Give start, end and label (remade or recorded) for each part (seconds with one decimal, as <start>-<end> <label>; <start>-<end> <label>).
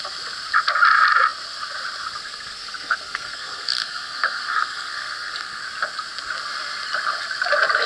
0.0-2.2 recorded; 2.2-5.6 remade; 5.6-7.9 recorded